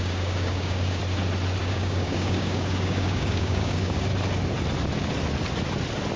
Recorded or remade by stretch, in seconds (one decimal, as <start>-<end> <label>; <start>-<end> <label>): 0.0-1.0 remade; 1.0-1.6 recorded; 1.6-4.1 remade; 4.1-6.2 recorded